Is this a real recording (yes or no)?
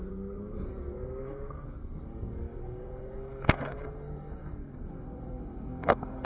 no